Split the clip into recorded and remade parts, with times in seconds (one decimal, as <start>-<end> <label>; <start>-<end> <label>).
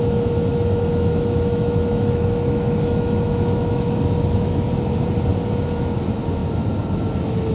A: 0.0-0.5 recorded; 0.5-4.7 remade; 4.7-7.5 recorded